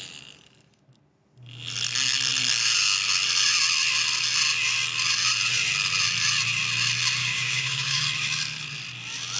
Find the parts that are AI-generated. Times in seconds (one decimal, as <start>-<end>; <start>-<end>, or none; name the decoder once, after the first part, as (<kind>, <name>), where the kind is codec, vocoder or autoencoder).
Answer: 7.2-8.0 (codec, DAC)